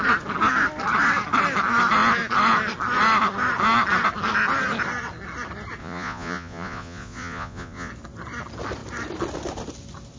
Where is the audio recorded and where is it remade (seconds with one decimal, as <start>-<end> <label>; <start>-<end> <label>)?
0.0-5.8 recorded; 5.8-7.9 remade; 7.9-10.2 recorded